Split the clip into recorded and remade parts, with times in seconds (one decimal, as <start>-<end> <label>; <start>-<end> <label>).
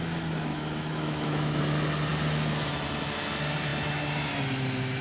0.0-0.5 recorded; 0.5-1.6 remade; 1.6-5.0 recorded